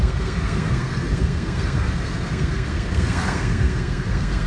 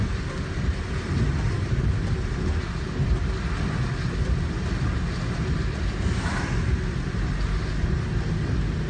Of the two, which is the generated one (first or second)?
first